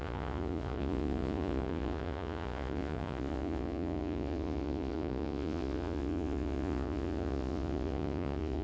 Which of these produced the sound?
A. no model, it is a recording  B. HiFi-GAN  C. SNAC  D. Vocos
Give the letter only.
D